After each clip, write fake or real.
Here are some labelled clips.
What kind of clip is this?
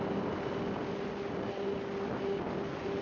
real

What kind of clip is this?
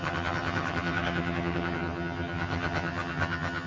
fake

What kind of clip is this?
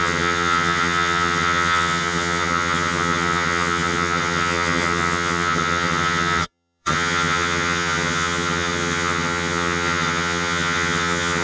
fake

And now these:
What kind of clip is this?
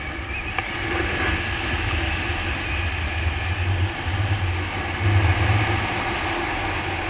real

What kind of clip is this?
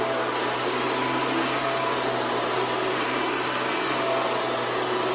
real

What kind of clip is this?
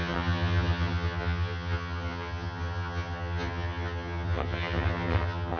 fake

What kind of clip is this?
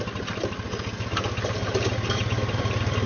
real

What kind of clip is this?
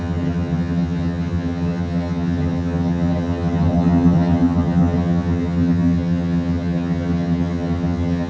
fake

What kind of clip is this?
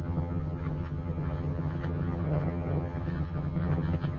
fake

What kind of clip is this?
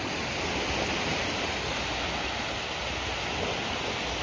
real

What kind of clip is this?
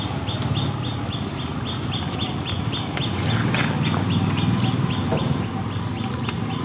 real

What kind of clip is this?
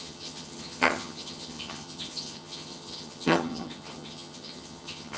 fake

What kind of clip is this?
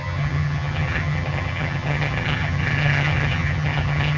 fake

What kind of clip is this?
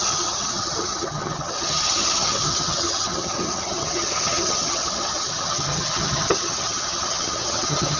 fake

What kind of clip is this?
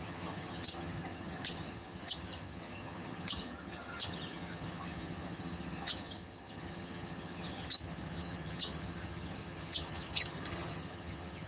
fake